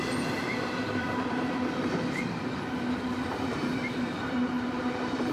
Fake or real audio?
fake